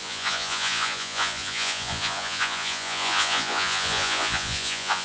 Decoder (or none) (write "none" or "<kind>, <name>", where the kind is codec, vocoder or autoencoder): vocoder, Vocos